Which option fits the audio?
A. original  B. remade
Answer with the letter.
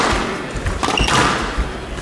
A